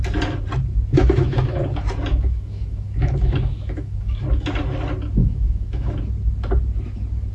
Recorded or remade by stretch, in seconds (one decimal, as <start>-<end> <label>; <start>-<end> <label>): 0.0-1.0 recorded; 1.0-1.6 remade; 1.6-2.1 recorded; 2.1-4.2 remade; 4.2-5.2 recorded; 5.2-6.0 remade; 6.0-7.3 recorded